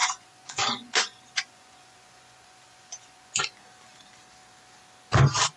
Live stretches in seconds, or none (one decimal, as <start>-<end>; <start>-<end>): 3.4-5.6